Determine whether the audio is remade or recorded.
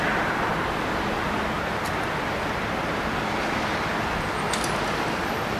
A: recorded